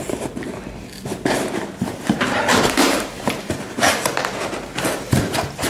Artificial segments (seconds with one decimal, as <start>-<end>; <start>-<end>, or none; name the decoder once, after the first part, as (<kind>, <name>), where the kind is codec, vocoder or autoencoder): 1.1-4.2 (vocoder, BigVGAN v2)